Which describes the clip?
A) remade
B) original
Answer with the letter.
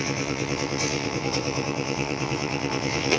A